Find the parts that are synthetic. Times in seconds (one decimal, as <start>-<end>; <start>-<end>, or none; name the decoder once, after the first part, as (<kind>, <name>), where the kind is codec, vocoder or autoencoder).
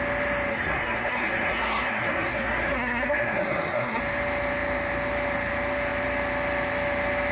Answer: 0.5-4.0 (codec, SNAC)